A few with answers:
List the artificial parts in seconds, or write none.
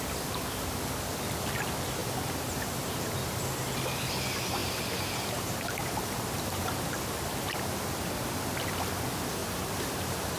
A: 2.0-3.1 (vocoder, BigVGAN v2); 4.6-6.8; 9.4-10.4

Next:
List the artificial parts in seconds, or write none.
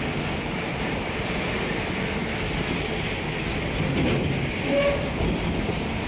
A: 0.0-2.2 (vocoder, BigVGAN v2)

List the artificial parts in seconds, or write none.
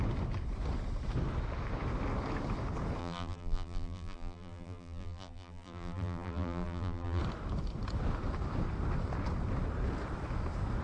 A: 3.0-7.2 (vocoder, BigVGAN v2)